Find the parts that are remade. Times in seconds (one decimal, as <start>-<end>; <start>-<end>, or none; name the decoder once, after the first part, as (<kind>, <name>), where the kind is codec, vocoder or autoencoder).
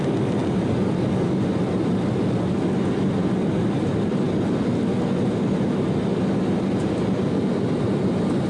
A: none